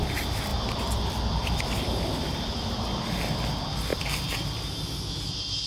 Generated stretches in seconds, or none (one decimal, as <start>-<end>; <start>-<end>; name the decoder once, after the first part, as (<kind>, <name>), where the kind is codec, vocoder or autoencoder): 0.5-2.8 (vocoder, BigVGAN v2); 3.9-4.5